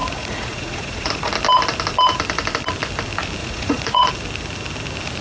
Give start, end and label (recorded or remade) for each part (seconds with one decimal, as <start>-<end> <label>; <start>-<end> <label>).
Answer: 0.0-1.3 remade; 1.3-3.4 recorded; 3.4-4.1 remade; 4.1-5.2 recorded